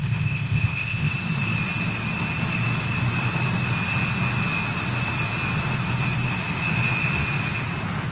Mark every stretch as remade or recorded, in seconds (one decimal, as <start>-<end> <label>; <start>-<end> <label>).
0.0-1.1 remade; 1.1-8.1 recorded